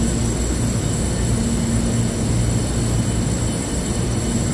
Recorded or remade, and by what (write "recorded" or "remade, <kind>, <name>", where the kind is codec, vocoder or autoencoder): recorded